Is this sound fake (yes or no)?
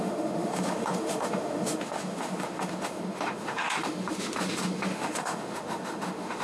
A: yes